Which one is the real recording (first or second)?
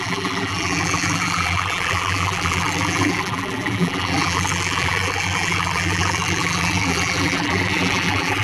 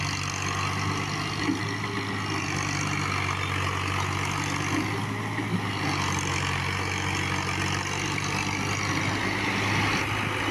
second